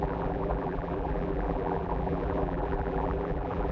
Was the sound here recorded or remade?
remade